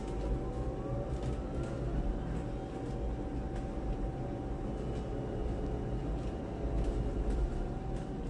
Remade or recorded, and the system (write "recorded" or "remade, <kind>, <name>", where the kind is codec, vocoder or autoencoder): recorded